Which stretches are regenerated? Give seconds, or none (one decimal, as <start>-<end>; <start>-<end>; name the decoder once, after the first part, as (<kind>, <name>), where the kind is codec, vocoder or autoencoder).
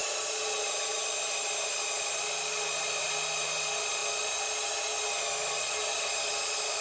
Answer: none